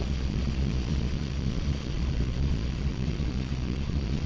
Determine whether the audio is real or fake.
fake